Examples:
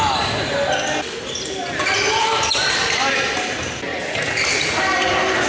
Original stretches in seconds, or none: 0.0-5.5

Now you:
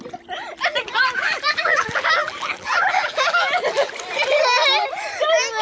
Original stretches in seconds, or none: 0.0-0.5; 3.9-5.6

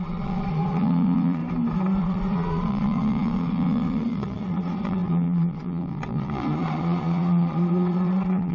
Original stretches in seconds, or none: 1.4-2.0

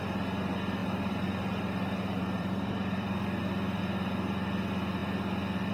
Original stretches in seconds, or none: 0.0-0.8; 3.8-5.7

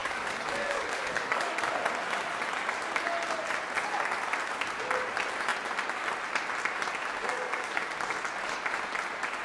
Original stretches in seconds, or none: 1.7-7.3; 7.8-9.4

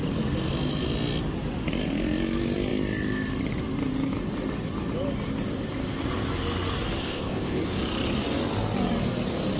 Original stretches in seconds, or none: 0.0-7.0; 7.6-9.6

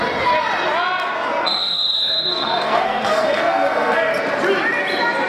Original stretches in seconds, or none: 0.0-1.4; 4.1-5.3